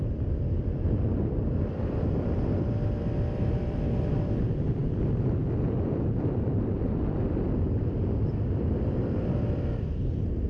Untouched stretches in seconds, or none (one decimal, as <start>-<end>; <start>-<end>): 4.8-6.1